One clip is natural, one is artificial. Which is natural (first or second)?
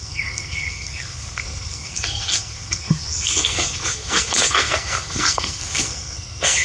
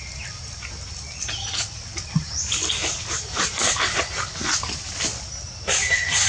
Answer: second